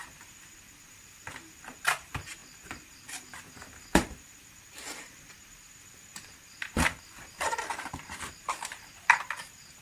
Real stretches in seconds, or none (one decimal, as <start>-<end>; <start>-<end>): none